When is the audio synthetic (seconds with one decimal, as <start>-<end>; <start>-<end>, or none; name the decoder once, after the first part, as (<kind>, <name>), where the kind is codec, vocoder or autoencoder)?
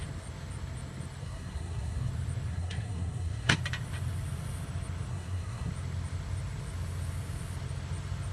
1.2-2.1 (codec, SNAC); 2.5-3.6; 5.1-5.7